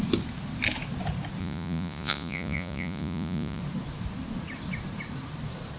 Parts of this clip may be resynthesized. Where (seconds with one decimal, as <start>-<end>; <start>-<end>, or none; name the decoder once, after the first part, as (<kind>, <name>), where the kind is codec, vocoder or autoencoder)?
1.4-3.6 (vocoder, Vocos)